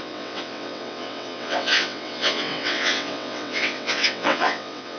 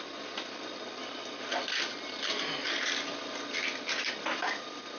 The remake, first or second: first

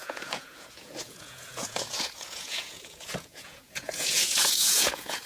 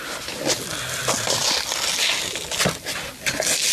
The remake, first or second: first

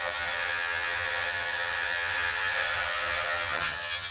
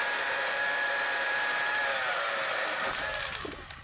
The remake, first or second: first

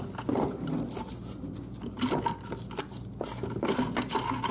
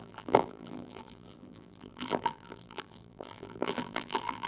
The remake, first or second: second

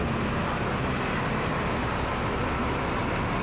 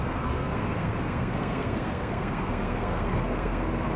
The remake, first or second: second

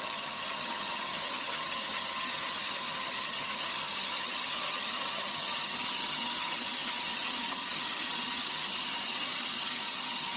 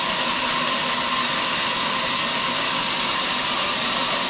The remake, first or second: first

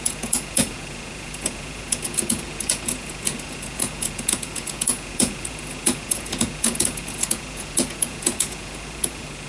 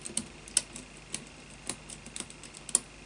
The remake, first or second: first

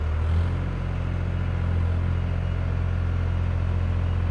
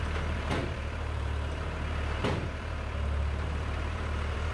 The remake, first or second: second